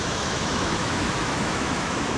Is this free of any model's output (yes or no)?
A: no